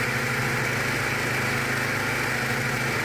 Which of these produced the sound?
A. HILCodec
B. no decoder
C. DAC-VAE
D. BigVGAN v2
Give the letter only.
B